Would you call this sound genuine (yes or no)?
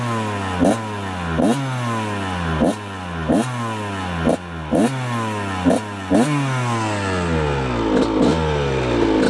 yes